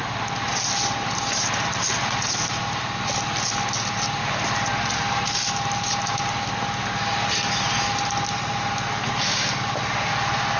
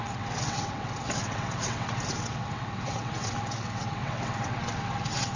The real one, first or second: first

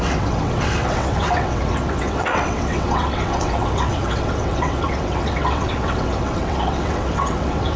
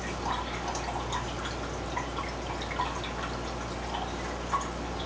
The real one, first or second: second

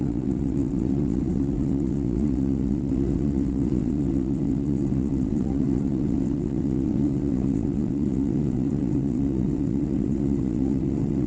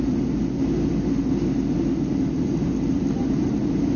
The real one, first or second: second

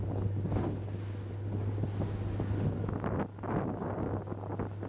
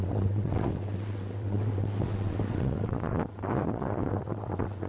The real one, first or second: first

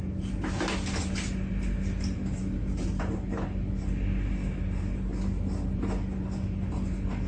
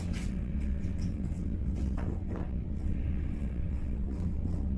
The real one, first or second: first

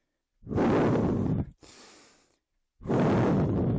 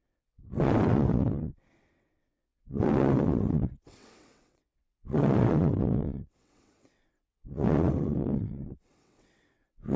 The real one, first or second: first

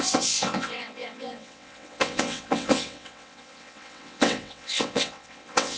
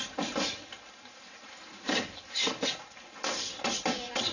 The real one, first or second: second